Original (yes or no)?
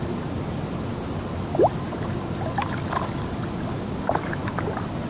yes